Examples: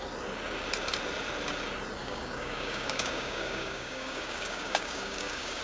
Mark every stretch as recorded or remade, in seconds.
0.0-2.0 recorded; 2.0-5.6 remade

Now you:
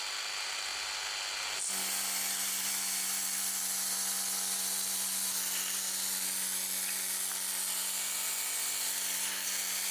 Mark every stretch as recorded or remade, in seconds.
0.0-9.9 recorded

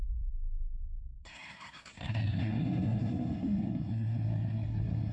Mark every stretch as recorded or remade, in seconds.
0.0-5.1 remade

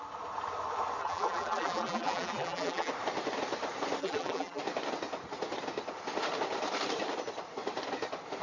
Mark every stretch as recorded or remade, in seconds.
0.0-1.0 recorded; 1.0-2.9 remade; 2.9-4.0 recorded; 4.0-4.6 remade; 4.6-8.4 recorded